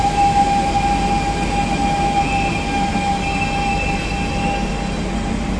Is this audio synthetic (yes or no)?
no